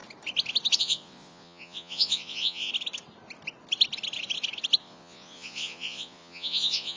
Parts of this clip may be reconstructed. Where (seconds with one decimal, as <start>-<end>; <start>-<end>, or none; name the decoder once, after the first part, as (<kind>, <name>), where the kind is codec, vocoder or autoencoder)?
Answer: 0.8-2.7 (vocoder, Vocos); 4.8-7.0